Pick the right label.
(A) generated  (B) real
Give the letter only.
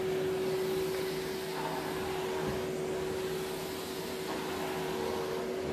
B